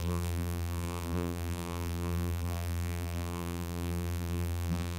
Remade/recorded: remade